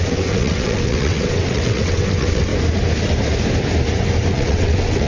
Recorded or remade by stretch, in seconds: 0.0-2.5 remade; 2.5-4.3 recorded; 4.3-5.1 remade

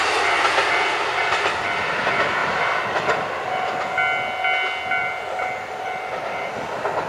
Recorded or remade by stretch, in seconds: 0.0-1.2 recorded; 1.2-2.0 remade; 2.0-5.0 recorded; 5.0-6.5 remade; 6.5-7.1 recorded

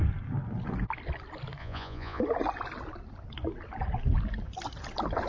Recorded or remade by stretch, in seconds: 0.0-1.6 recorded; 1.6-2.2 remade; 2.2-5.3 recorded

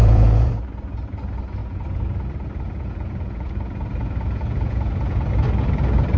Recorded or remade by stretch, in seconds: 0.0-0.5 remade; 0.5-1.6 recorded; 1.6-5.3 remade; 5.3-6.2 recorded

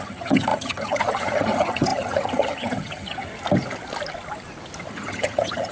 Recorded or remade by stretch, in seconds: 0.0-3.3 remade; 3.3-4.9 recorded; 4.9-5.7 remade

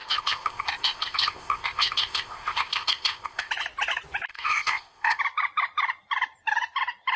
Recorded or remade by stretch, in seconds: 0.0-3.5 remade; 3.5-4.3 recorded; 4.3-5.2 remade; 5.2-7.2 recorded

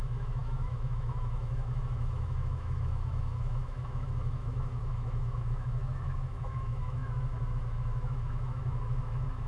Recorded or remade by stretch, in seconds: 0.0-9.5 remade